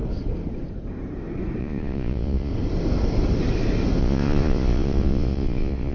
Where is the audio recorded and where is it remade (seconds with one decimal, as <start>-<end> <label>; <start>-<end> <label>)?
0.0-1.6 recorded; 1.6-2.5 remade; 2.5-4.0 recorded; 4.0-5.9 remade